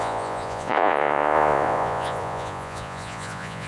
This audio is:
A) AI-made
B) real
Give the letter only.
A